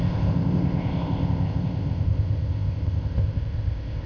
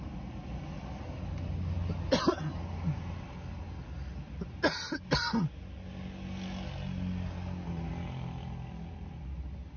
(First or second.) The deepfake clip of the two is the first